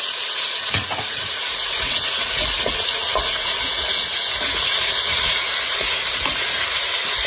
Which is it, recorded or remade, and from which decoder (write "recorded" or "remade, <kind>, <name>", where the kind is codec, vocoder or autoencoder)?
remade, vocoder, Vocos